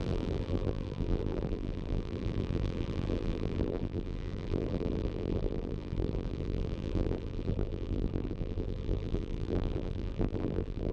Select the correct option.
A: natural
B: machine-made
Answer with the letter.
B